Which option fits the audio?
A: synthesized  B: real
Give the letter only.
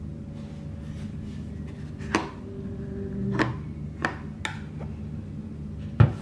B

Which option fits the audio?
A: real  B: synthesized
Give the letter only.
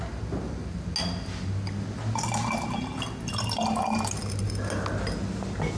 A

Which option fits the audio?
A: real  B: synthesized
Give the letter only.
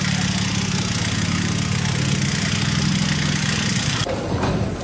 A